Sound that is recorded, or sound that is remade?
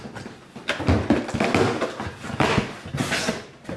recorded